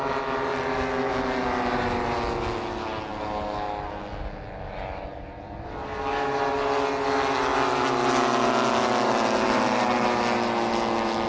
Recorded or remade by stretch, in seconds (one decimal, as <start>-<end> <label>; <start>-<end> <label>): 0.0-11.3 recorded